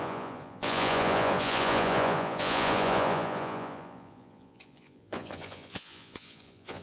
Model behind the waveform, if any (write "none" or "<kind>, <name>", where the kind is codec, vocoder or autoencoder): vocoder, Vocos